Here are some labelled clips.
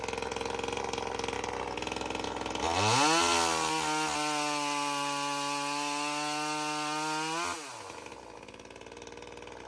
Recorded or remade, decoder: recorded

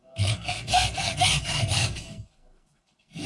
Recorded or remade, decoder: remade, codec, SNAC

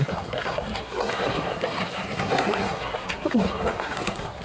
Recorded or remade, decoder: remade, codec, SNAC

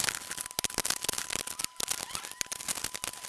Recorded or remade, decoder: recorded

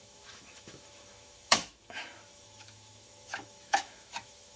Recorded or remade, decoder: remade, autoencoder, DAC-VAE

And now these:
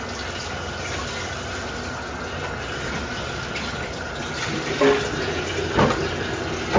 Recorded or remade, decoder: recorded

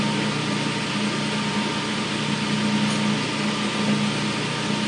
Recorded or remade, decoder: recorded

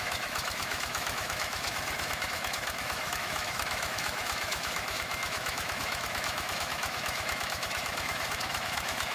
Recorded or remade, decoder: remade, autoencoder, DAC-VAE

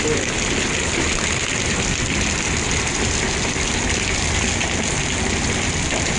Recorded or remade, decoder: recorded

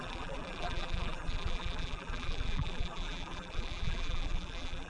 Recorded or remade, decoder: remade, vocoder, BigVGAN v2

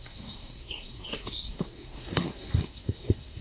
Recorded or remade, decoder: remade, codec, SNAC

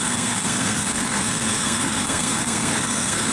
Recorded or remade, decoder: remade, codec, SNAC